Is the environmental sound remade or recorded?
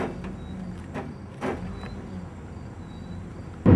recorded